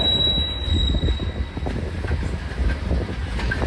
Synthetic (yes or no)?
no